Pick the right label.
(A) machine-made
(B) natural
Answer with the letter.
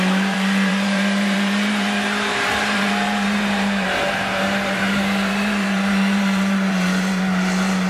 A